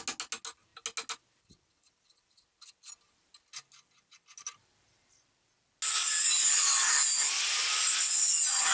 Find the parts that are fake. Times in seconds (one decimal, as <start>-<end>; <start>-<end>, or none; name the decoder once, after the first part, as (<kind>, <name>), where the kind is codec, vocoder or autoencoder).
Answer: none